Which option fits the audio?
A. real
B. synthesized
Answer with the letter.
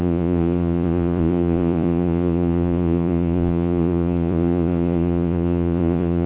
B